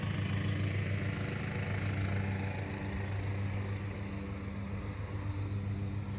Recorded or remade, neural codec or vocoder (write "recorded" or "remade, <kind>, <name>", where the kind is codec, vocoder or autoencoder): recorded